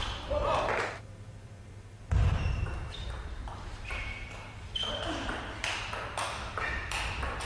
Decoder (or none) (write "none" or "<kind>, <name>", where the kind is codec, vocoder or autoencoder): vocoder, BigVGAN v2